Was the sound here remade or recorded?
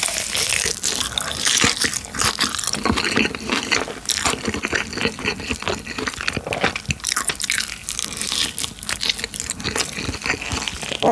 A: recorded